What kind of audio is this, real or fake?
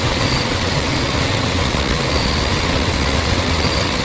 fake